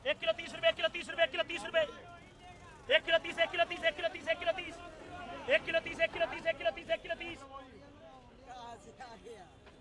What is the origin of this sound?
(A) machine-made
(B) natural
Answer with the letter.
B